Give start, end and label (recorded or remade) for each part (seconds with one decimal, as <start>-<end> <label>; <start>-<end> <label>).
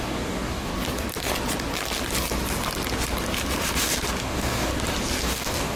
0.0-0.7 remade; 0.7-4.2 recorded; 4.2-4.7 remade; 4.7-5.2 recorded; 5.2-5.8 remade